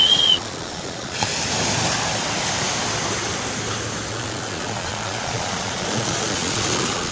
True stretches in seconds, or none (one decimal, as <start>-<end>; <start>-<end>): 1.3-4.1

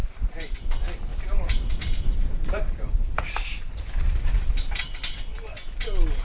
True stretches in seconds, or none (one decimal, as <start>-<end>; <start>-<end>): 0.6-1.1; 4.8-6.2

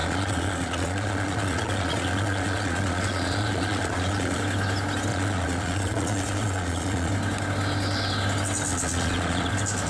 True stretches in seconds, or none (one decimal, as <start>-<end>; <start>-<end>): 4.4-5.1; 7.1-8.7; 9.5-9.9

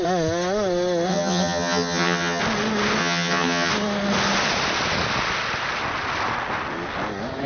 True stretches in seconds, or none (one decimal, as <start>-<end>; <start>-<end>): 0.0-1.1; 2.4-3.0; 3.7-7.5

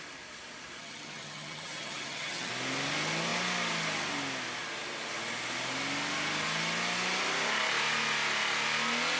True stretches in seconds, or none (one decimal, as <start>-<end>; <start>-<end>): 0.0-0.8; 2.5-9.2